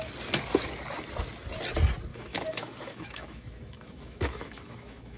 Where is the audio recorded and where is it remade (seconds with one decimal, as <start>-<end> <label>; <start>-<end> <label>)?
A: 0.0-2.1 recorded; 2.1-5.2 remade